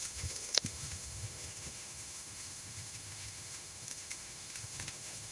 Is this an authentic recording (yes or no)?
no